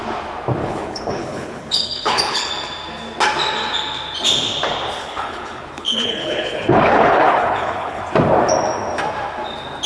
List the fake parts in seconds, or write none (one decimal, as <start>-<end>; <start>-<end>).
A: 0.6-2.5; 5.0-8.0